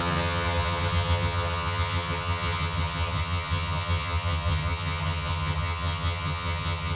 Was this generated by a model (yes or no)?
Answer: yes